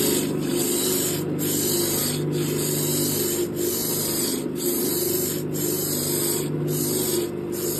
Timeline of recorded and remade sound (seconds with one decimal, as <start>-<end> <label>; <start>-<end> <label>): 0.0-7.8 recorded